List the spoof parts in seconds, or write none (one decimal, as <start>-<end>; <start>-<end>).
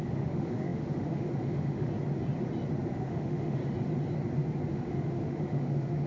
0.0-1.9; 2.9-3.6; 4.7-6.1